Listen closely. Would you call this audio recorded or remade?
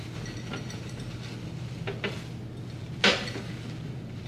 recorded